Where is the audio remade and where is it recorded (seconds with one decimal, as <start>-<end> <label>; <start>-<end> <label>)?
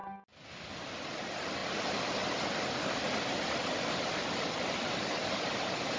0.0-6.0 recorded